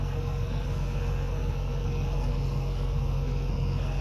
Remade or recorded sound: remade